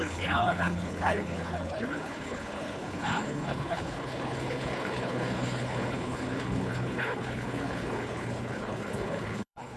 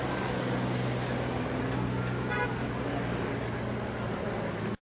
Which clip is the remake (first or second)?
first